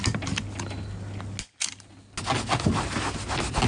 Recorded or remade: recorded